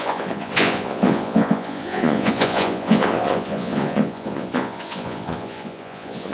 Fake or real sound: fake